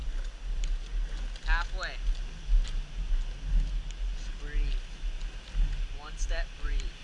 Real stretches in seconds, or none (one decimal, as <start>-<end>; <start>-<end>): 0.0-5.9